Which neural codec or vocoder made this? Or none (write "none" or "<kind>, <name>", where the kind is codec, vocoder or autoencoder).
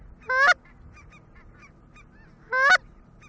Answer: none